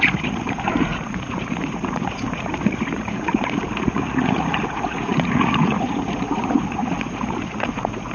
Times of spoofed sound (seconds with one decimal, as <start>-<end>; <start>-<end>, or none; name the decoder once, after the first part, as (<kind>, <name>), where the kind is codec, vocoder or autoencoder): 0.0-8.1 (vocoder, Vocos)